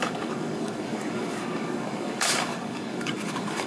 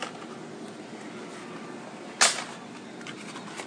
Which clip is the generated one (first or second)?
first